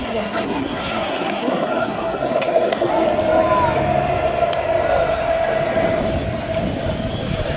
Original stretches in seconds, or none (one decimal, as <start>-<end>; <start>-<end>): 2.9-7.6